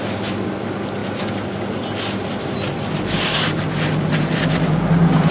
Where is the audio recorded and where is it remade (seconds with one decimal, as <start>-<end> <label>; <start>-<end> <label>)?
0.0-5.3 recorded